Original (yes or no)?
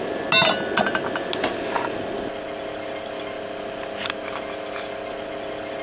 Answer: yes